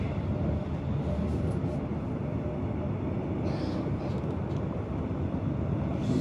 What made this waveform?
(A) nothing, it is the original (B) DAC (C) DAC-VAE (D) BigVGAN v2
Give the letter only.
A